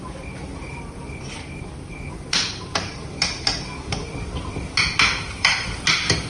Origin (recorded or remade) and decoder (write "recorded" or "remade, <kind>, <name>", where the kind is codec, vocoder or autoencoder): recorded